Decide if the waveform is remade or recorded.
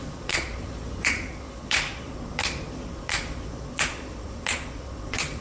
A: remade